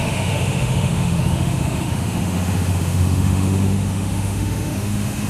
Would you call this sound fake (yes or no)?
yes